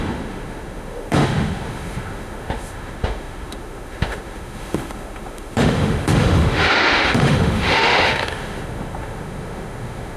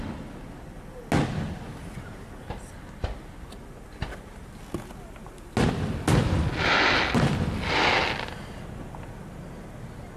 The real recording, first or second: second